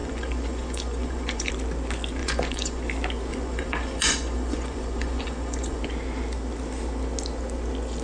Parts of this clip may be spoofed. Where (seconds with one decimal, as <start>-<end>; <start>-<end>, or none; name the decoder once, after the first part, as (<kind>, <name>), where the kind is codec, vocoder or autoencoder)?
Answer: 0.0-1.5 (vocoder, Vocos); 2.2-2.8; 3.3-5.8